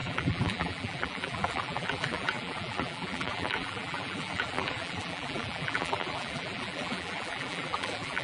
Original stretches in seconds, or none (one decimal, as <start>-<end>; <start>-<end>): none